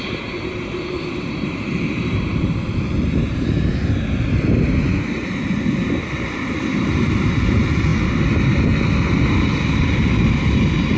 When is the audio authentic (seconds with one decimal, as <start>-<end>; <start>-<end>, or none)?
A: 3.7-6.8; 7.9-9.3